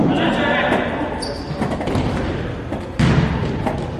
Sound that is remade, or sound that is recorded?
recorded